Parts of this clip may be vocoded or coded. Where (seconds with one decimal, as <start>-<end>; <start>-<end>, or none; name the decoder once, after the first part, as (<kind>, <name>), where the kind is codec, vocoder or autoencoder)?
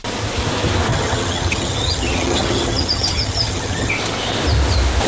0.9-3.9 (vocoder, HiFi-GAN)